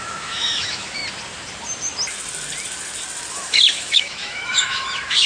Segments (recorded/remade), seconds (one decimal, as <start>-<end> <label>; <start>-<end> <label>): 0.0-1.0 remade; 1.0-3.3 recorded; 3.3-5.3 remade